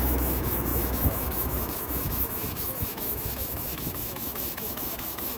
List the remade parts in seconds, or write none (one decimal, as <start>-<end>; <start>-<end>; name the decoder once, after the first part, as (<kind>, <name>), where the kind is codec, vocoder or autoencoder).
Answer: 0.0-5.4 (autoencoder, DAC-VAE)